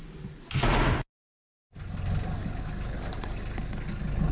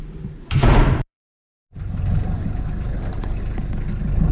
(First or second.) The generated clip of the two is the second